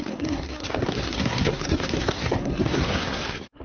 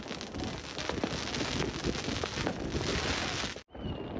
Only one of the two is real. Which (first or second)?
second